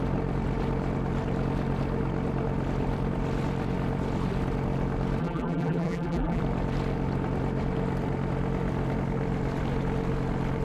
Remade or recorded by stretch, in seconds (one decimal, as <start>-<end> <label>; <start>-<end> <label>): 0.0-5.2 recorded; 5.2-6.4 remade; 6.4-10.6 recorded